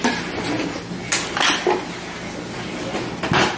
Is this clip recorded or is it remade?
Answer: recorded